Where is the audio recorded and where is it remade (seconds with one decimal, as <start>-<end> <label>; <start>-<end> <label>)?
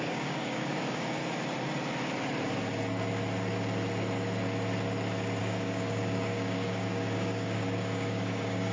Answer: 0.0-1.2 remade; 1.2-5.4 recorded; 5.4-8.7 remade